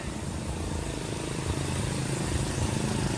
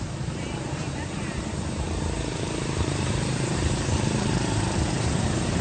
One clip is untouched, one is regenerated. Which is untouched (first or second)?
first